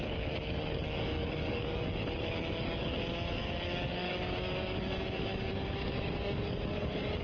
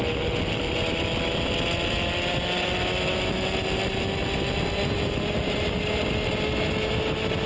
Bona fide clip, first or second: second